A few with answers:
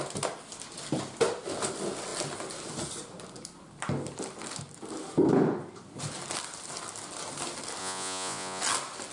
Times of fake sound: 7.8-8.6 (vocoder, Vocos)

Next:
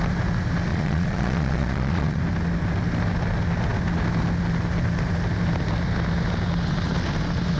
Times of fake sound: 0.7-2.2 (vocoder, Vocos)

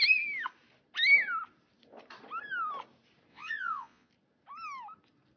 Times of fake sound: 3.3-4.1 (vocoder, Vocos)